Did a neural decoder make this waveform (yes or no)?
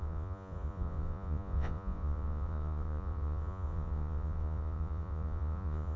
yes